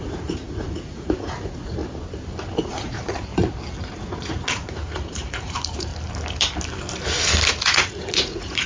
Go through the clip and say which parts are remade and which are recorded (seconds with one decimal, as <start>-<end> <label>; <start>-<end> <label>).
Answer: 0.0-1.8 remade; 1.8-2.6 recorded; 2.6-3.3 remade; 3.3-3.8 recorded; 3.8-5.9 remade; 5.9-7.5 recorded; 7.5-8.7 remade